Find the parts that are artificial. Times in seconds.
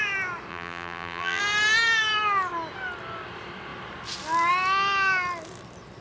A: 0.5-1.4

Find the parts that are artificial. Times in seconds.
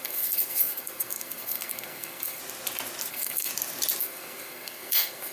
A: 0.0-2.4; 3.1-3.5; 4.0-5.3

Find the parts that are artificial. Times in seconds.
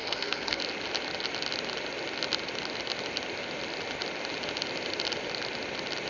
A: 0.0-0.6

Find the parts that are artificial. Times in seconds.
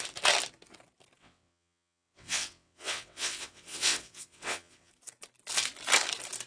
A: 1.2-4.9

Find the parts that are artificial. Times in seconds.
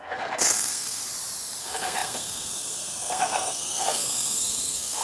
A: 0.0-1.0; 1.6-5.0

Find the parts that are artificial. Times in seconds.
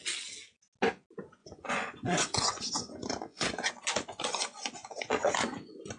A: 1.4-3.7; 4.3-5.3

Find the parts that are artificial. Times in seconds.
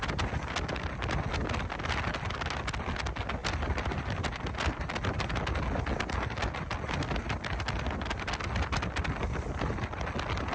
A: 3.4-4.5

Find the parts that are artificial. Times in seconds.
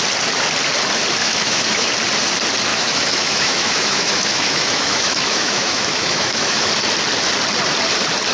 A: 1.2-1.9; 2.7-6.7